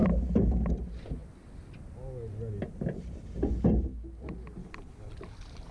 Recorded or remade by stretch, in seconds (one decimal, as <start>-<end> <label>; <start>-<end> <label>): 0.0-4.6 recorded; 4.6-5.1 remade; 5.1-5.7 recorded